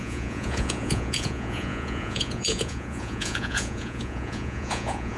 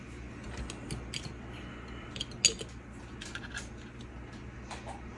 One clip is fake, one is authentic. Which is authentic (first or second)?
second